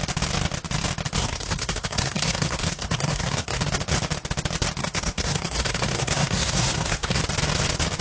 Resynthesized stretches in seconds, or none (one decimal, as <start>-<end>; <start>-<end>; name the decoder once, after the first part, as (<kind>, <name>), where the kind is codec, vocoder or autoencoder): 1.2-3.6 (codec, SNAC); 4.8-7.2